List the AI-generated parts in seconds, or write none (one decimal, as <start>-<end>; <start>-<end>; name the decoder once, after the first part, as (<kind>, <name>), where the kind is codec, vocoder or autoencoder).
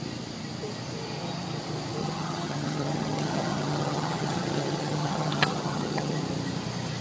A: 2.0-6.2 (vocoder, HiFi-GAN)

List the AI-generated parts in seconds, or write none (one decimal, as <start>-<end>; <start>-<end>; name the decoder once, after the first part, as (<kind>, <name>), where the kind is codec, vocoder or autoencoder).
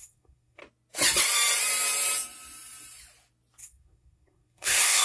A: 0.0-0.6 (codec, SNAC); 3.6-5.0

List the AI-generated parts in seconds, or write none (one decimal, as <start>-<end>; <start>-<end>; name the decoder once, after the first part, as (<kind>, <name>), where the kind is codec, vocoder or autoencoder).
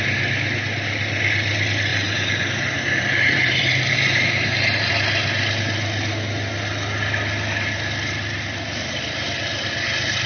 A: 1.9-4.9 (vocoder, BigVGAN v2)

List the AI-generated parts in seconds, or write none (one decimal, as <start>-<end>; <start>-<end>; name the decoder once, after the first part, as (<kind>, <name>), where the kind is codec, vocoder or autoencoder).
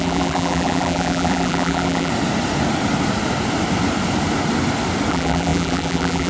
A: 0.0-2.1 (vocoder, BigVGAN v2); 5.1-6.3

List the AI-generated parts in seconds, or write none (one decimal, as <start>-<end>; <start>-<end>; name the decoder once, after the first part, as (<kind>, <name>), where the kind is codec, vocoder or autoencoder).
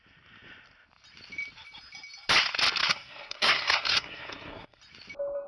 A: 2.8-4.8 (codec, SNAC)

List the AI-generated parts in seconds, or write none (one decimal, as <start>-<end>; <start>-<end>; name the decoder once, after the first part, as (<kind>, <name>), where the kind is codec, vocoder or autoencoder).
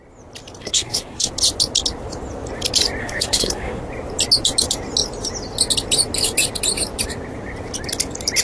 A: 0.6-1.3 (codec, SNAC); 3.0-3.8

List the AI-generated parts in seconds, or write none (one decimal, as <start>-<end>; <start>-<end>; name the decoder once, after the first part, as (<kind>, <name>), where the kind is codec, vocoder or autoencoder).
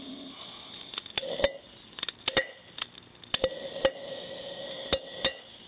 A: none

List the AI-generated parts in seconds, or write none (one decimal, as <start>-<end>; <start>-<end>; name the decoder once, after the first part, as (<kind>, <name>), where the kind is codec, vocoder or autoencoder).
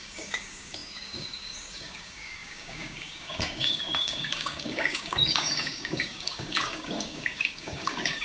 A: 0.0-8.2 (codec, DAC)